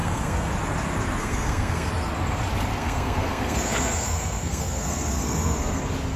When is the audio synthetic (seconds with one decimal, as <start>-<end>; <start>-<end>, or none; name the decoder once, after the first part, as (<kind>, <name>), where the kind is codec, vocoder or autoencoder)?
0.0-0.5 (codec, SNAC); 1.2-1.9; 2.8-5.8